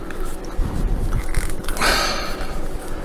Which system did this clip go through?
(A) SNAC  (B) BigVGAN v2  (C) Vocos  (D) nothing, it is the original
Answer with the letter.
B